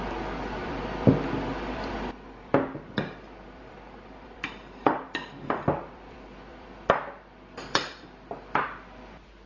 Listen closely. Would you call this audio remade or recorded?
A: remade